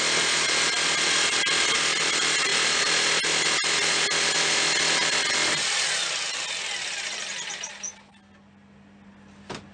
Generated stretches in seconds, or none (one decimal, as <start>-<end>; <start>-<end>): none